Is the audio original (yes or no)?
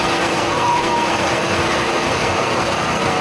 no